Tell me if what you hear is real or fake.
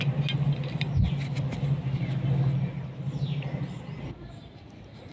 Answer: real